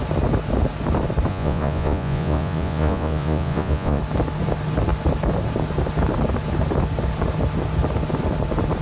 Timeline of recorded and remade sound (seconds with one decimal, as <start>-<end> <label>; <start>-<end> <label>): 0.0-1.3 recorded; 1.3-4.0 remade; 4.0-8.8 recorded